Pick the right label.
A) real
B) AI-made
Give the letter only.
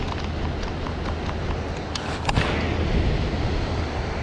A